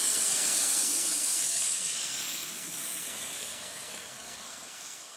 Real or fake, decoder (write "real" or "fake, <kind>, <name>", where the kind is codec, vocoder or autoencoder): fake, codec, SNAC